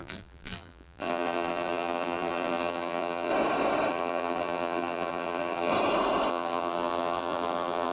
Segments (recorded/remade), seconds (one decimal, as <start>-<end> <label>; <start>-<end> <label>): 0.0-3.3 remade; 3.3-3.9 recorded; 3.9-5.7 remade; 5.7-6.3 recorded; 6.3-7.9 remade